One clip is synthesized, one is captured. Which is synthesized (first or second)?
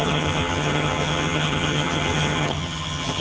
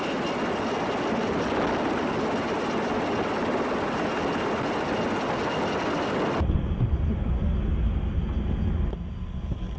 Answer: first